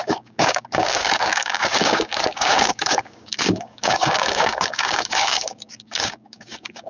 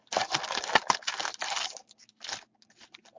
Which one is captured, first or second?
second